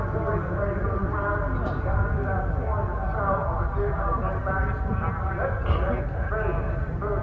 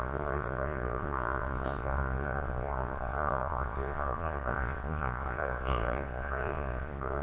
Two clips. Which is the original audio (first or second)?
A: first